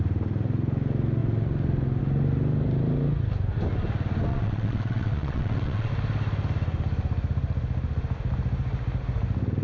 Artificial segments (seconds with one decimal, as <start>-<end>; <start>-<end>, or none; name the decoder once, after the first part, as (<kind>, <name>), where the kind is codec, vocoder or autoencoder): 4.3-5.9 (vocoder, WaveNeXt)